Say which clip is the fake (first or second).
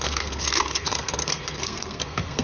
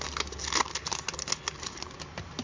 first